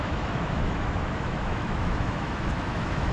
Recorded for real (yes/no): no